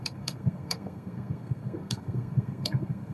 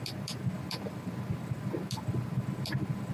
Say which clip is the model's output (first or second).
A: first